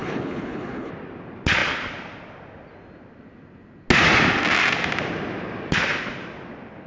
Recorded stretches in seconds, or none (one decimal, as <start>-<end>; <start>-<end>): 0.9-6.9